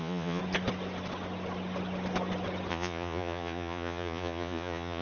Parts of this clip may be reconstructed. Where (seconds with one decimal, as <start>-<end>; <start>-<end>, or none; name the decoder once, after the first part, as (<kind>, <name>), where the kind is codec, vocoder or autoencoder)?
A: 0.0-0.4 (vocoder, Vocos); 2.7-5.0